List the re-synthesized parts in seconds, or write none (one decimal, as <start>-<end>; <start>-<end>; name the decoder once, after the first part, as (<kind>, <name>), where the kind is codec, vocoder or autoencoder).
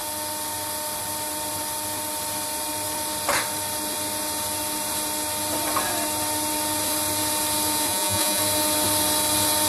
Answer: 7.9-8.4 (vocoder, Vocos)